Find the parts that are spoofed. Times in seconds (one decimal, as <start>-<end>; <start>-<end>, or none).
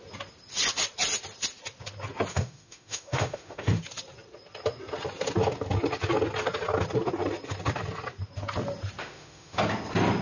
2.3-3.8; 9.0-9.6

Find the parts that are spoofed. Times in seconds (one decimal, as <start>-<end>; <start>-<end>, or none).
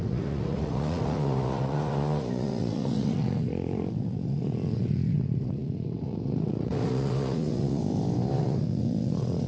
0.0-7.8; 8.4-9.5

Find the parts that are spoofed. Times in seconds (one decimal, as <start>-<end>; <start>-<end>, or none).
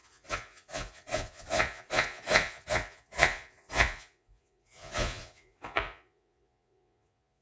0.0-7.4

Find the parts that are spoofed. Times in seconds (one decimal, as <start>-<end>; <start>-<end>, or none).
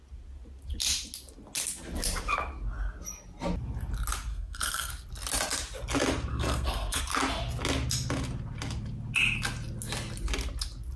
4.3-4.9; 6.3-7.0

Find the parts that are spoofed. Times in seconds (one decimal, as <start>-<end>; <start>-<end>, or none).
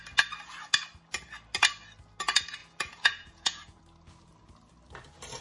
2.6-3.8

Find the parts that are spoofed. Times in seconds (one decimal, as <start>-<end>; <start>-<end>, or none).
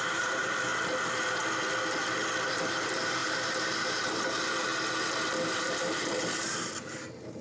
0.0-0.7; 2.5-4.7; 5.5-7.4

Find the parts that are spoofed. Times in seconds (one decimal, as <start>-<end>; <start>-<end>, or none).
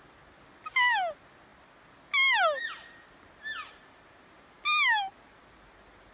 none